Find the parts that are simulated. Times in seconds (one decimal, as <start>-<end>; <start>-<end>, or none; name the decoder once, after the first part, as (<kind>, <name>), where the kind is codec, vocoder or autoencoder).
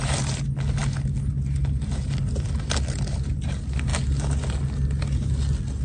none